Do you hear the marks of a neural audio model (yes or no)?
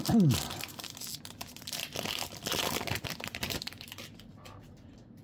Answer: no